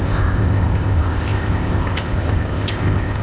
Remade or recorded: remade